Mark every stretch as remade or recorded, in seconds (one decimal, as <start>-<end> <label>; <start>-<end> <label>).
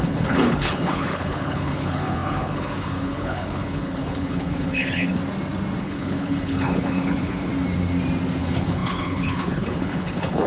0.0-5.2 remade; 5.2-5.8 recorded; 5.8-7.5 remade; 7.5-8.4 recorded; 8.4-10.5 remade